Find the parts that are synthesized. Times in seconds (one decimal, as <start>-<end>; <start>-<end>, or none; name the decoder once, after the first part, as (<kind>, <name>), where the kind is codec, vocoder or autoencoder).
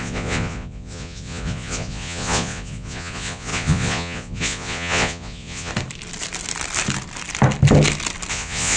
0.0-5.7 (vocoder, Vocos); 8.3-8.8